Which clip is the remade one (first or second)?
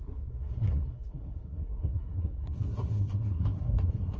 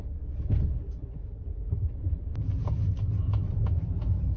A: first